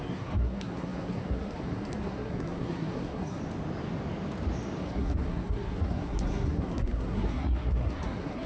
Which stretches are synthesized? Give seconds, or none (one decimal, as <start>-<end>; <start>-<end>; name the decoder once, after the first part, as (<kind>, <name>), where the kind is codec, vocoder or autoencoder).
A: 0.0-3.4 (codec, SNAC); 4.8-8.5